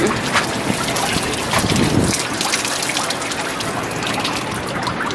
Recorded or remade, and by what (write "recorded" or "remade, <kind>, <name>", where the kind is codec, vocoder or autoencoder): recorded